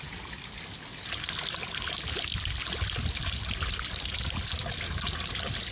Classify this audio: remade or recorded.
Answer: recorded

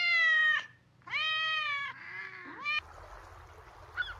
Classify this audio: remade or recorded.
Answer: recorded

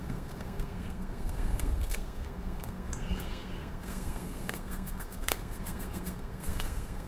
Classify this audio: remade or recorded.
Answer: remade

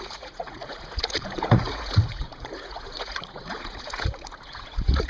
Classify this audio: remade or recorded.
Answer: remade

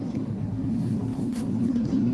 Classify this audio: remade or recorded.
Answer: remade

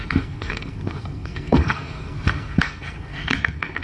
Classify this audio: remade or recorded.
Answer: remade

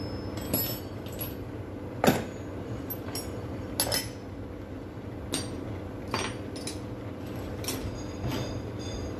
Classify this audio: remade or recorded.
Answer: recorded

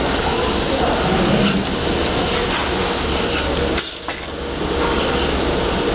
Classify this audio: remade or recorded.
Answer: recorded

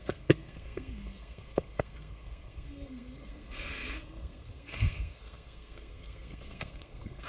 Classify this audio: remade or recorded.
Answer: remade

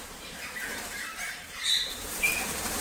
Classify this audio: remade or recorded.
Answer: remade